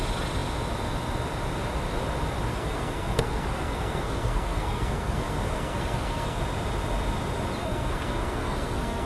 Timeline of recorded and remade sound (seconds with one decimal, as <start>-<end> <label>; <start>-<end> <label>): 0.0-2.5 recorded; 2.5-6.4 remade; 6.4-7.6 recorded; 7.6-9.1 remade